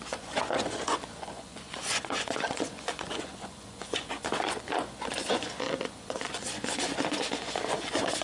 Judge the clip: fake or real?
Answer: fake